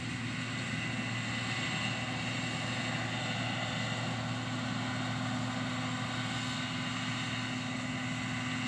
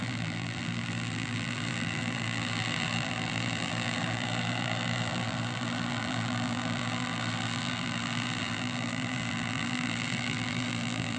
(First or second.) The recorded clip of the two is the first